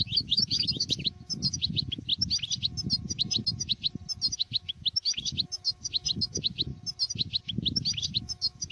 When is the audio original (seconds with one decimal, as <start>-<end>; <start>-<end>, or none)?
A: 2.1-4.4; 6.7-8.0